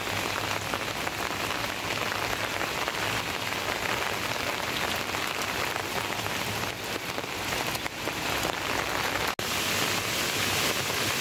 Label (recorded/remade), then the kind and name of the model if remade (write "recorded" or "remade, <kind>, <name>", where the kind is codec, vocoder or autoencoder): recorded